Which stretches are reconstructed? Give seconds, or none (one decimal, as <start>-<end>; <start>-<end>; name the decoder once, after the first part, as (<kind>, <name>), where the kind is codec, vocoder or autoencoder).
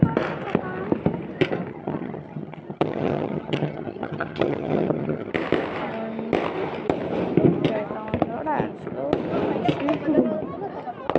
1.7-5.3 (vocoder, HiFi-GAN)